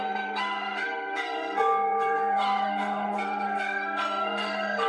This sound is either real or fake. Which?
fake